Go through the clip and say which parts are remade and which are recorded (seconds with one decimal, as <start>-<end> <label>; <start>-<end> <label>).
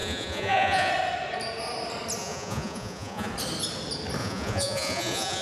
0.0-0.9 remade; 0.9-2.2 recorded; 2.2-3.3 remade; 3.3-4.2 recorded; 4.2-5.4 remade